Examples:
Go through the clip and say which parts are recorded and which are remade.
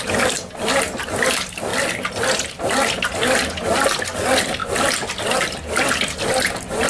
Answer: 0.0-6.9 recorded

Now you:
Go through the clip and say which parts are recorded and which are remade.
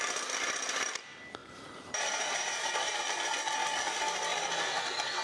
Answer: 0.0-1.4 recorded; 1.4-3.0 remade; 3.0-5.2 recorded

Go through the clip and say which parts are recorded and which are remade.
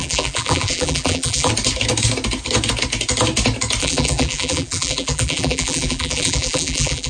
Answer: 0.0-1.5 remade; 1.5-3.8 recorded; 3.8-7.1 remade